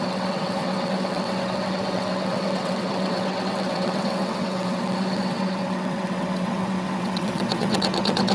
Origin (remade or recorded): remade